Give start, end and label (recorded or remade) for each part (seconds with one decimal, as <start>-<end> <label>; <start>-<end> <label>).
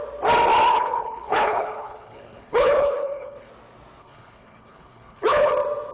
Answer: 0.0-0.7 recorded; 0.7-3.5 remade; 3.5-4.0 recorded; 4.0-5.5 remade; 5.5-5.9 recorded